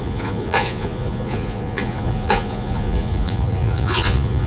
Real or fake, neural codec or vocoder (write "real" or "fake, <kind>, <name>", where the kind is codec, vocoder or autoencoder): fake, vocoder, Vocos